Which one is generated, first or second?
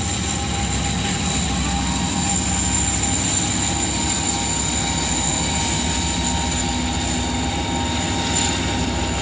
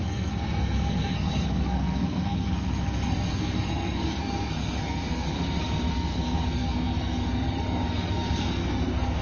second